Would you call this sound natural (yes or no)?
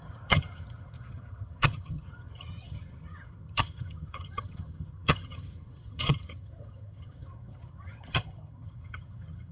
no